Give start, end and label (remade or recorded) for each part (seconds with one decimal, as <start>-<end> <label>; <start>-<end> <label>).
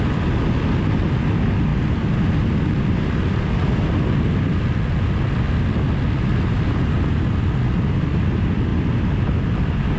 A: 0.0-10.0 recorded